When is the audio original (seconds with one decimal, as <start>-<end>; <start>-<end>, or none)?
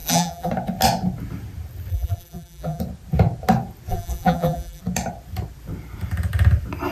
0.5-1.9; 2.8-3.9; 4.8-6.9